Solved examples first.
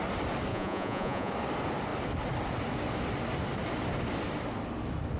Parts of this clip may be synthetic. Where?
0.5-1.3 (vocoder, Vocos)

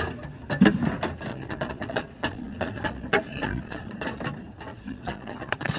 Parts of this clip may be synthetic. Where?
1.3-4.2 (vocoder, Vocos); 4.7-5.8

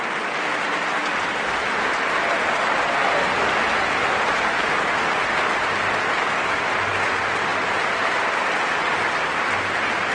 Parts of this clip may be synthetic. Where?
none

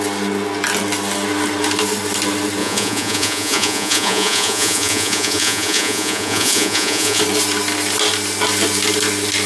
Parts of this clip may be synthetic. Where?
2.6-7.2 (vocoder, Vocos)

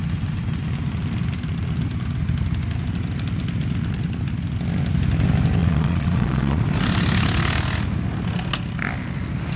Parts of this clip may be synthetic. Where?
5.6-6.6 (vocoder, Vocos)

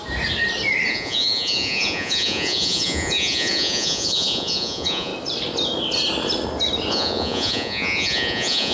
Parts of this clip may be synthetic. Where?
0.9-5.1 (vocoder, Vocos); 6.9-8.7